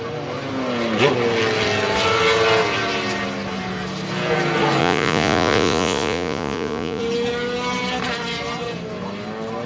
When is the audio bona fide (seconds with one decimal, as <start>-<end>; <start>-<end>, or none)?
0.0-4.8; 7.0-9.7